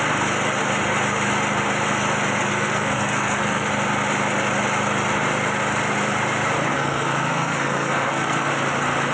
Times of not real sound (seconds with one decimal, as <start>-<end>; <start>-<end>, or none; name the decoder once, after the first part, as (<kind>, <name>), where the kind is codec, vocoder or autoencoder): 2.5-3.7 (codec, SNAC); 6.7-8.5